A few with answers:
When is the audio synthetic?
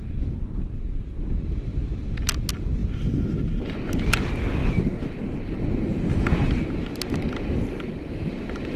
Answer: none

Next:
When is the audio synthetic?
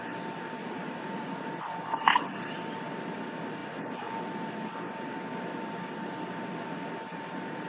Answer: 0.6-1.7 (vocoder, Vocos)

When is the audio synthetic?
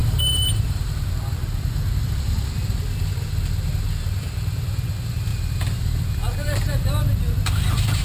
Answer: 0.0-1.1 (vocoder, BigVGAN v2); 5.3-6.9